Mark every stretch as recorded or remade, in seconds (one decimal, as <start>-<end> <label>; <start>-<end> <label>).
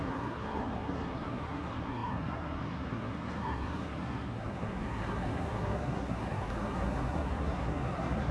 0.0-8.3 remade